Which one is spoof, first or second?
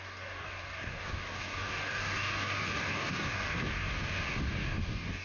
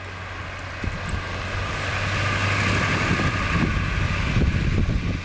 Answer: first